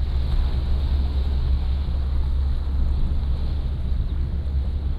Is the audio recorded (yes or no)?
yes